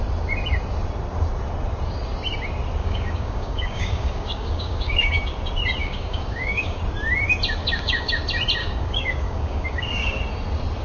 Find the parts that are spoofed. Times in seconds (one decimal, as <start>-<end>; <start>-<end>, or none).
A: 2.8-5.2; 5.8-6.8; 7.6-8.1; 8.6-10.2